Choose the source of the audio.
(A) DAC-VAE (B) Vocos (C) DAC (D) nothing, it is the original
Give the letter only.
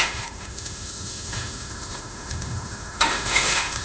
A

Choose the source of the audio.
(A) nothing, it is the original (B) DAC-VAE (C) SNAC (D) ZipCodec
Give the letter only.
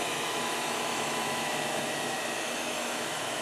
B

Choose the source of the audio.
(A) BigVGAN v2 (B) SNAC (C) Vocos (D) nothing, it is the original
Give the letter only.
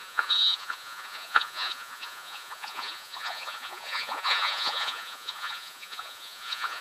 C